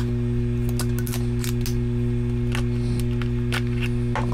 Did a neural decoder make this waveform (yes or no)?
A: no